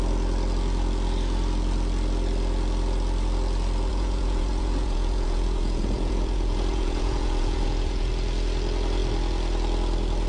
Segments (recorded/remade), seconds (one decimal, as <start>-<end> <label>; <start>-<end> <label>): 0.0-3.9 recorded; 3.9-8.1 remade; 8.1-10.3 recorded